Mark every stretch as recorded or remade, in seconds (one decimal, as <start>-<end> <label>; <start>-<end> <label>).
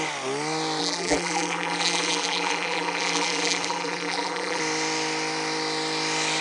0.0-0.8 recorded; 0.8-4.6 remade; 4.6-6.4 recorded